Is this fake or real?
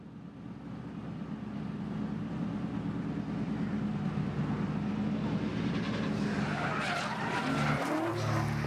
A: real